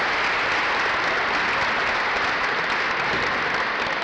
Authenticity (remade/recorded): recorded